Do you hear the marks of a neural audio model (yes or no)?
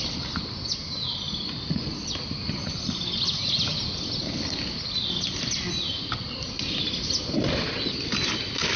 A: no